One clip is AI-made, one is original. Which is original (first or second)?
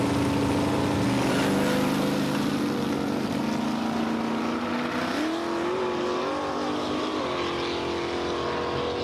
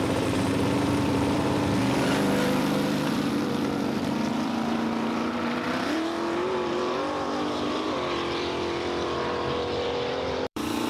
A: first